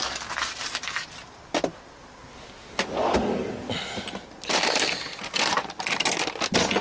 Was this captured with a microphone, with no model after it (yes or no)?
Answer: yes